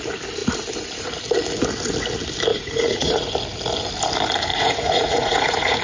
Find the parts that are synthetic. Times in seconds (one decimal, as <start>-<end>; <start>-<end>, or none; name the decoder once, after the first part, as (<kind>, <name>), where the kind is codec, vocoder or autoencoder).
2.5-3.3 (vocoder, Vocos); 4.5-5.8